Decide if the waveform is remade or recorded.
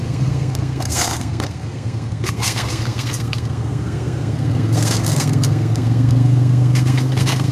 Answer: remade